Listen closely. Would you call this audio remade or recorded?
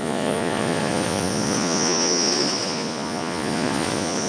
remade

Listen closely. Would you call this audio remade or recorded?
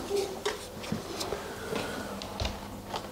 recorded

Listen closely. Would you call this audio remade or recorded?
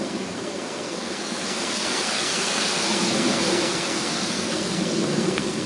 remade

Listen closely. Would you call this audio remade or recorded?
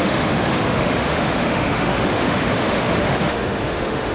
remade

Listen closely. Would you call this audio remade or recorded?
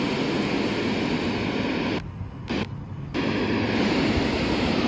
recorded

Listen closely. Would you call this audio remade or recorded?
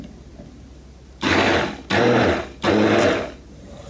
recorded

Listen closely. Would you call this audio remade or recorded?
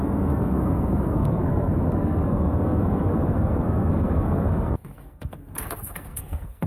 remade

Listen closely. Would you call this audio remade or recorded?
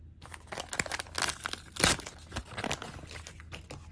recorded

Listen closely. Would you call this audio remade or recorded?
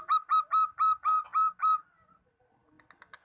recorded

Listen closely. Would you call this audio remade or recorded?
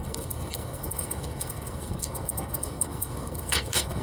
remade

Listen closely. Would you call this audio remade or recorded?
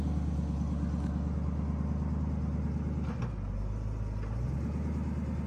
recorded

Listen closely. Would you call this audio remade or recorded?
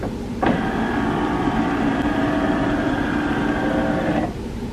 remade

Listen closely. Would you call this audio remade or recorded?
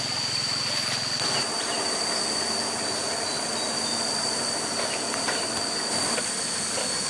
recorded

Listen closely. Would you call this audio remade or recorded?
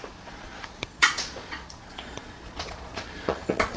remade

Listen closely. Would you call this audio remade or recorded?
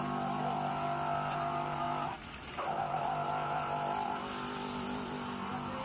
recorded